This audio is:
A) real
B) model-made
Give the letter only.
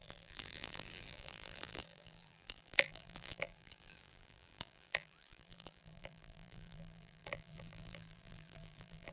B